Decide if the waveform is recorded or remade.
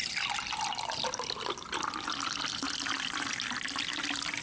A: recorded